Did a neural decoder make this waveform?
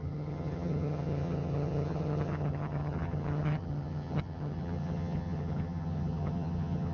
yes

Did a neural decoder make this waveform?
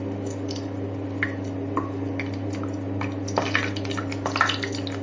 no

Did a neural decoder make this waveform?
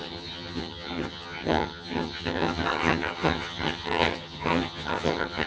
yes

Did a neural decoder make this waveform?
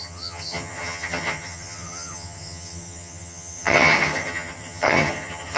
yes